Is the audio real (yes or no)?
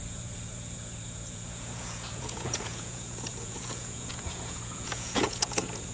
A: no